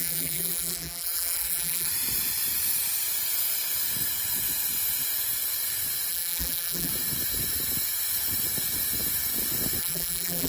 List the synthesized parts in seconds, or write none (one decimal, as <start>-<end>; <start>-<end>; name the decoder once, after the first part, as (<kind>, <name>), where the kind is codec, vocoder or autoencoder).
0.0-1.9 (vocoder, BigVGAN v2); 6.1-6.9; 9.8-10.5

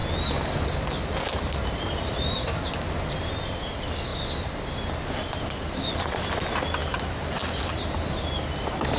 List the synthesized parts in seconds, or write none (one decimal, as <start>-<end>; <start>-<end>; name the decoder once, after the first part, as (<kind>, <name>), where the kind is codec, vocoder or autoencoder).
4.1-5.8 (vocoder, BigVGAN v2)